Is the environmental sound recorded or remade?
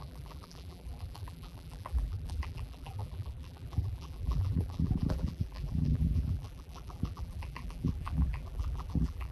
remade